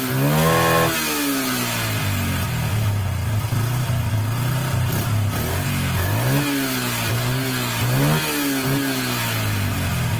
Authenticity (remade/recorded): recorded